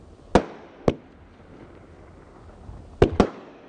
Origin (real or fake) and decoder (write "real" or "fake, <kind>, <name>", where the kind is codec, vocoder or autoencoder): real